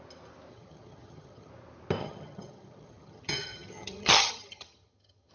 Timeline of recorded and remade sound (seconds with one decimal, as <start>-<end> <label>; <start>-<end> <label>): 0.0-0.5 recorded; 0.5-1.5 remade; 1.5-2.0 recorded; 2.0-5.3 remade